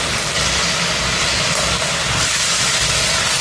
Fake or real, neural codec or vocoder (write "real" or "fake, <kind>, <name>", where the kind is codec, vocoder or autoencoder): real